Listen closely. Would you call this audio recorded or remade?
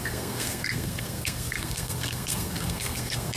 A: remade